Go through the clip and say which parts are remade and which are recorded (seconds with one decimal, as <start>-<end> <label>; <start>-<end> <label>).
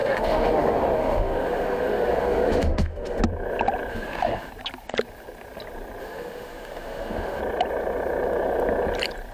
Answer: 0.0-3.2 remade; 3.2-3.9 recorded; 3.9-4.5 remade; 4.5-6.0 recorded; 6.0-7.4 remade; 7.4-9.3 recorded